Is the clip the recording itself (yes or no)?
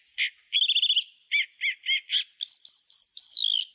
yes